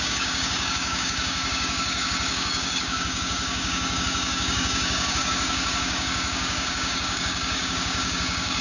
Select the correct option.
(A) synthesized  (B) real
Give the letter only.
A